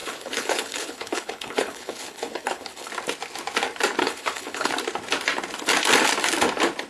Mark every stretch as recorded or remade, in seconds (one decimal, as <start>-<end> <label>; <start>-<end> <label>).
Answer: 0.0-2.9 remade; 2.9-4.0 recorded; 4.0-4.7 remade; 4.7-6.9 recorded